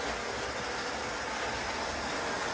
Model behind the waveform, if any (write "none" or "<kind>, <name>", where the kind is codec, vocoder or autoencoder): none